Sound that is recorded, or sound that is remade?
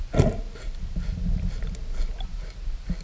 recorded